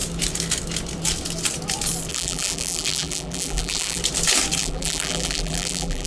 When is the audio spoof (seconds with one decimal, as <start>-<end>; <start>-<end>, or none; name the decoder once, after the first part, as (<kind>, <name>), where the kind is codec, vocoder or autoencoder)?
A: 2.1-4.0 (vocoder, BigVGAN v2); 4.6-6.1